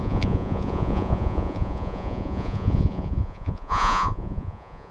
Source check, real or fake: fake